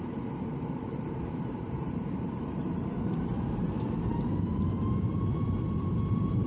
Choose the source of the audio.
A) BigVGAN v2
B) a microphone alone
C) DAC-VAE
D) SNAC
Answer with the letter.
A